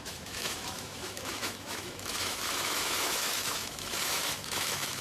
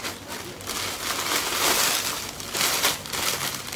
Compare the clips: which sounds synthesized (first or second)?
first